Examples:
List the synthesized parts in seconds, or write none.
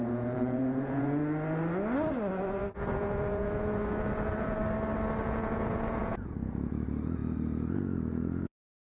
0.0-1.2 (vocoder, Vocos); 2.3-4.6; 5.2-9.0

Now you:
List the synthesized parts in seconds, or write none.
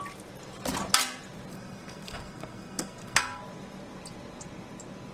1.5-3.4 (codec, SNAC)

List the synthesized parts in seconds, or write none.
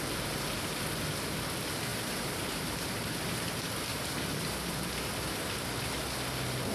1.9-2.9 (vocoder, BigVGAN v2); 3.9-5.1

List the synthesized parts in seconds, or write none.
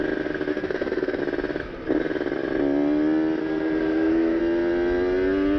0.5-1.2 (codec, SNAC); 3.4-4.4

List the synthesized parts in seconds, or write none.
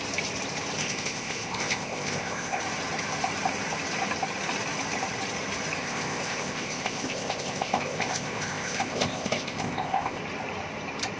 0.8-2.6 (codec, ZipCodec); 5.8-10.2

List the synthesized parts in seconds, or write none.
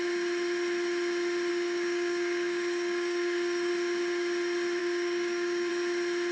1.5-3.7 (codec, DAC); 4.8-5.7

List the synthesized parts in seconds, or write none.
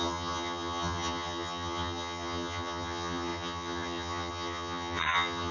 0.0-5.5 (vocoder, HiFi-GAN)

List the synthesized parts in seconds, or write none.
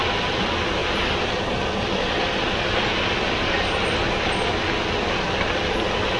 none